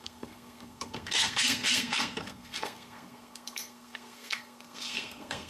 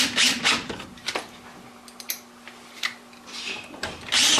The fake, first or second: first